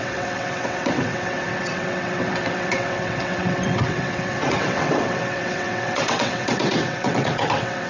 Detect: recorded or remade remade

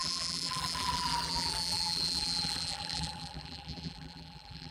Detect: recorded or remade remade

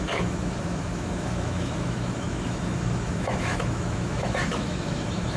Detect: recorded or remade remade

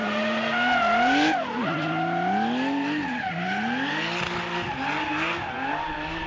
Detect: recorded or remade recorded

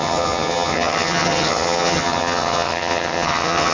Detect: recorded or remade remade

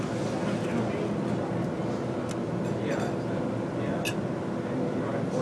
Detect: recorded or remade recorded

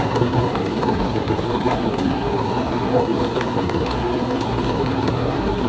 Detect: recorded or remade remade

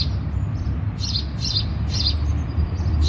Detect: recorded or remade recorded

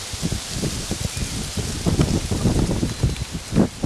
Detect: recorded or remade recorded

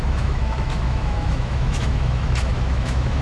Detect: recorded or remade remade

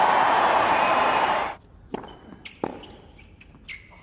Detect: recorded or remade recorded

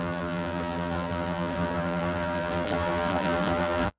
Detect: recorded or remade remade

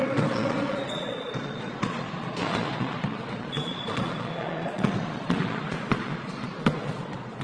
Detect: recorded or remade remade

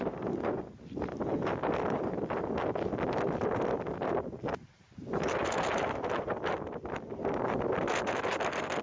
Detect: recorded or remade remade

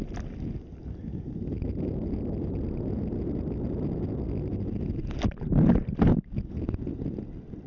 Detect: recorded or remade recorded